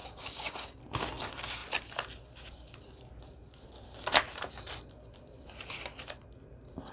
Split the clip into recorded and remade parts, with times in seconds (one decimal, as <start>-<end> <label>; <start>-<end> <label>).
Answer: 0.0-0.8 remade; 0.8-6.9 recorded